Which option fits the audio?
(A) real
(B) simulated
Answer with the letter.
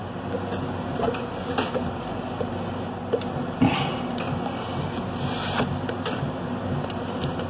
A